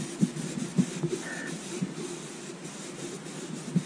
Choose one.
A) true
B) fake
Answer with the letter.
A